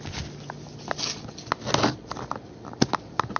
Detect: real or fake real